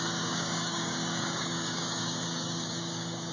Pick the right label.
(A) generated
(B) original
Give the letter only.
A